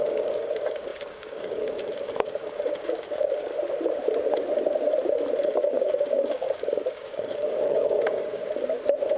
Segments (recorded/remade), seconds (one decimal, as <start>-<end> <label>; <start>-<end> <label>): 0.0-3.5 remade; 3.5-5.4 recorded; 5.4-8.4 remade; 8.4-9.2 recorded